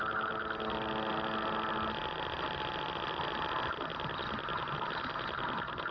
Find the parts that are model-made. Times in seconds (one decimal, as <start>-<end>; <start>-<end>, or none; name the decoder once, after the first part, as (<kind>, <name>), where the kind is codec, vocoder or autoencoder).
none